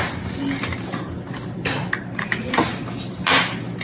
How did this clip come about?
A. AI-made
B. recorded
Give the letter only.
B